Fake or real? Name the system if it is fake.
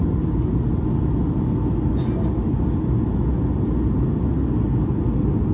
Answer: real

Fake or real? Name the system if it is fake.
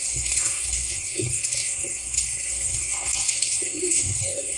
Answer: fake, codec, SNAC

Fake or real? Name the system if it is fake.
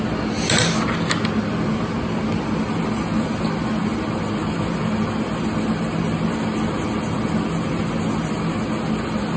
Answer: real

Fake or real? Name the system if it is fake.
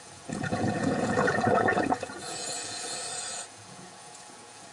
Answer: fake, vocoder, Vocos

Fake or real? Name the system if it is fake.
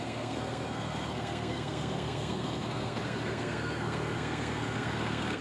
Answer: fake, codec, SNAC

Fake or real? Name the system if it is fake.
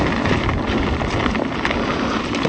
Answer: real